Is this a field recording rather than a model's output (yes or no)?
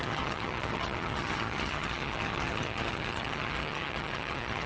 no